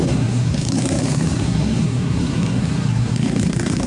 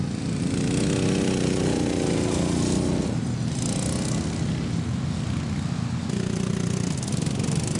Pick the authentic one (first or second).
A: second